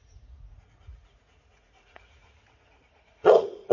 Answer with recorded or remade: remade